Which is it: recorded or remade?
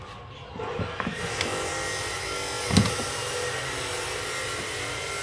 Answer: recorded